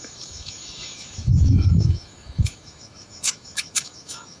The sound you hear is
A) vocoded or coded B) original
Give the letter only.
A